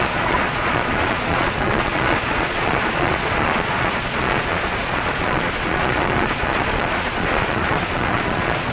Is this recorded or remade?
remade